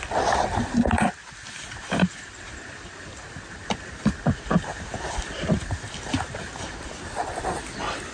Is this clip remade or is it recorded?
recorded